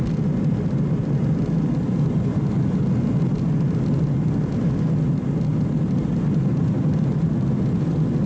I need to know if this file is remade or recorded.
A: recorded